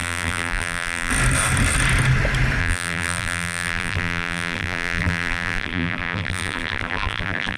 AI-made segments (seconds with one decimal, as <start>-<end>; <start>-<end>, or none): 0.0-1.1; 2.6-7.6